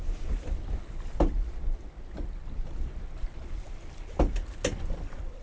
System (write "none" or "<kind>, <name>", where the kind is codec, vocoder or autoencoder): none